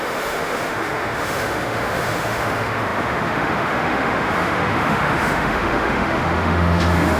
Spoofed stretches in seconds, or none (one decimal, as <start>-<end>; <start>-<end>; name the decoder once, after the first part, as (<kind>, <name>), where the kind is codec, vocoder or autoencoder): 0.0-7.2 (autoencoder, DAC-VAE)